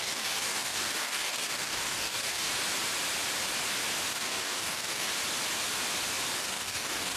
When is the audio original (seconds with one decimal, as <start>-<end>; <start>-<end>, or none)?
2.5-4.1; 5.1-6.4